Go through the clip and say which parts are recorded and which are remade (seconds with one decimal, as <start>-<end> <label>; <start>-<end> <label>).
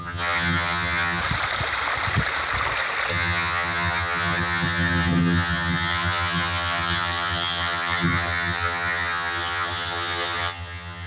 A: 0.0-1.2 remade; 1.2-3.1 recorded; 3.1-11.1 remade